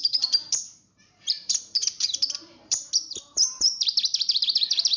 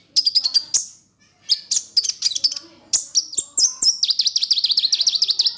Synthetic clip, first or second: first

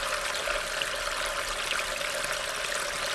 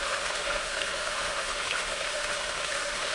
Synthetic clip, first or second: second